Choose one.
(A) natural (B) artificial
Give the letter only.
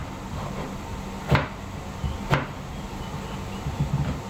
A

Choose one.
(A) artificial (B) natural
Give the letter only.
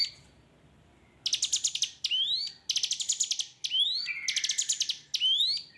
B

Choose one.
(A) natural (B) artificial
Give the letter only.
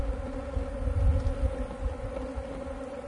A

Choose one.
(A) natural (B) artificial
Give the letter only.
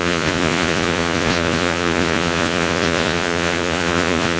B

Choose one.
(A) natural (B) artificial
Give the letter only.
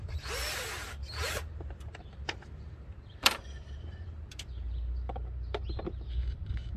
B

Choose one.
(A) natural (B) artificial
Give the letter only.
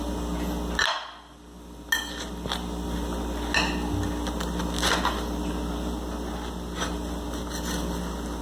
A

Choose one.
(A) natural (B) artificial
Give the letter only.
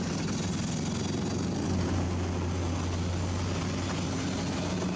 A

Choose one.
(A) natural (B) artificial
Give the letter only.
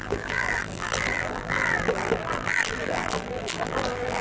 B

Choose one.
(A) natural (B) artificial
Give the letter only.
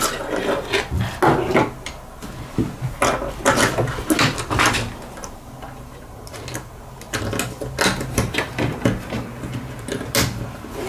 A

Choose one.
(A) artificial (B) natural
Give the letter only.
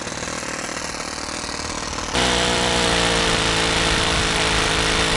B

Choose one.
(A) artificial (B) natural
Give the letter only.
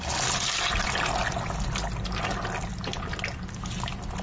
B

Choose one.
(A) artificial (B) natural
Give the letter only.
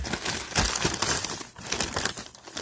B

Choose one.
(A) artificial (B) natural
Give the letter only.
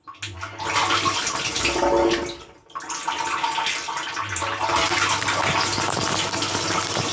B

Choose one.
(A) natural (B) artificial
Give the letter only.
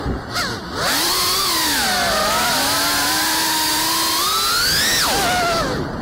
A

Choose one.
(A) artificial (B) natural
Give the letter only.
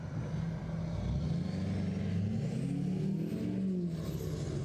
B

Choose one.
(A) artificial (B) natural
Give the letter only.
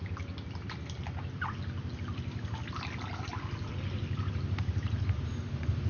A